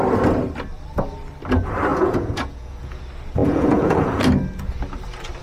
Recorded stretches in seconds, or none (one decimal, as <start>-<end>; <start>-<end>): 0.0-1.9; 3.0-3.4; 4.2-5.4